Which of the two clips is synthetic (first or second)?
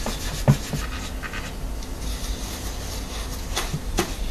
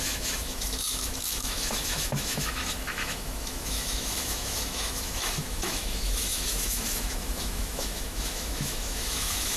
second